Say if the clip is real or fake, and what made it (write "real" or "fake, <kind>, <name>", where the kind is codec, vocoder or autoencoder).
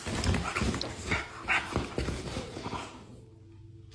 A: real